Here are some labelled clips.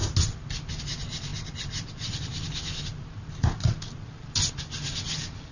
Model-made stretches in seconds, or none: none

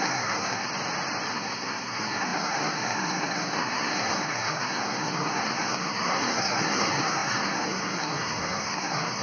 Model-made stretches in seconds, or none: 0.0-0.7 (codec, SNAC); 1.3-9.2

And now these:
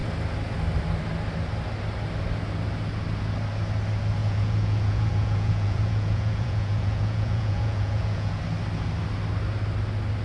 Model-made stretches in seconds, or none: 4.2-8.4 (vocoder, Vocos)